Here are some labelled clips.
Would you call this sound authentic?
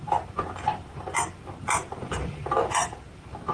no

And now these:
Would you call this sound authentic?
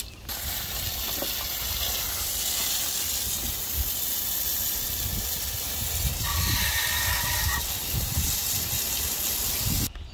yes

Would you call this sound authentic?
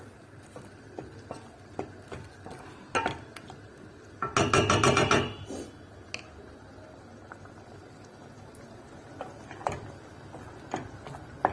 yes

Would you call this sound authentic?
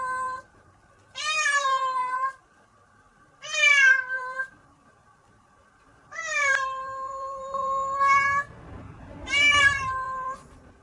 no